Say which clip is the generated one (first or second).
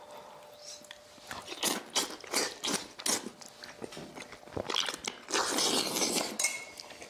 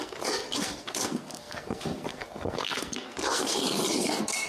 second